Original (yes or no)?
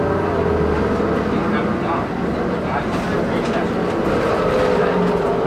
yes